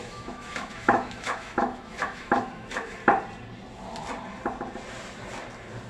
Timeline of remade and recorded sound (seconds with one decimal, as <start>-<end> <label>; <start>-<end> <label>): 0.0-3.0 remade; 3.0-5.9 recorded

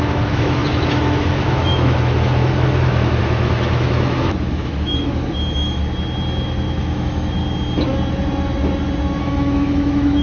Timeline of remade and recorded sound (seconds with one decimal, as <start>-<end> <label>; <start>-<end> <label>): 0.0-5.8 remade; 5.8-6.8 recorded; 6.8-7.4 remade; 7.4-9.2 recorded; 9.2-10.2 remade

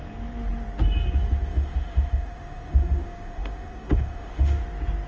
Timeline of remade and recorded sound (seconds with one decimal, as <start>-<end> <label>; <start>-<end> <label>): 0.0-1.5 recorded; 1.5-4.6 remade; 4.6-5.1 recorded

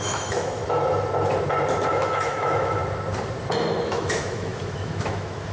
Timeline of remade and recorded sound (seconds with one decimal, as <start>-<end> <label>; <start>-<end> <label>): 0.0-0.6 remade; 0.6-1.9 recorded; 1.9-2.8 remade; 2.8-3.8 recorded; 3.8-5.5 remade

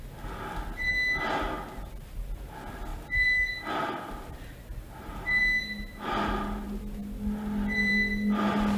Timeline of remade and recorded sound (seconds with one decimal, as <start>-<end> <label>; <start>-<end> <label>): 0.0-8.8 recorded